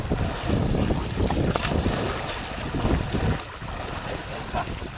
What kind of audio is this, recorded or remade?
recorded